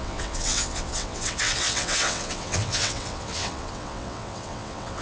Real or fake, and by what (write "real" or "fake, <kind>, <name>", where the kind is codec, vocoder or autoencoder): fake, vocoder, WaveNeXt